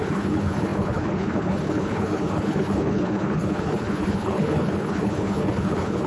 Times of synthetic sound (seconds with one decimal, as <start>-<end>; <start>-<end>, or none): 0.0-6.1